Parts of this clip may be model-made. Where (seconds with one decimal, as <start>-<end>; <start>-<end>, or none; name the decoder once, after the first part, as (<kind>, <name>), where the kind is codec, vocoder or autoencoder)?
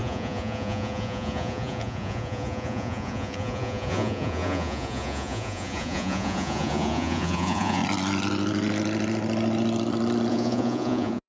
0.0-7.8 (vocoder, Vocos); 10.3-11.3